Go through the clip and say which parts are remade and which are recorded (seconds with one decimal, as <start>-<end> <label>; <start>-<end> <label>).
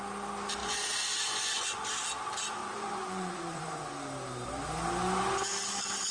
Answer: 0.0-0.6 recorded; 0.6-1.9 remade; 1.9-2.6 recorded; 2.6-3.8 remade; 3.8-6.1 recorded